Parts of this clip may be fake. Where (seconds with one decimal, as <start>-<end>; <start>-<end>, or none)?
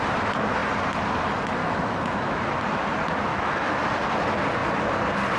1.6-2.6; 3.3-3.8